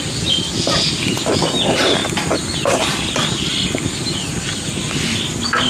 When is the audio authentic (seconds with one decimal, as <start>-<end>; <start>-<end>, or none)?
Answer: 0.0-5.7